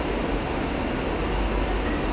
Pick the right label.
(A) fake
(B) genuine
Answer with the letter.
B